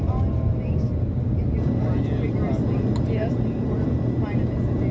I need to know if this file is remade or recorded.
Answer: recorded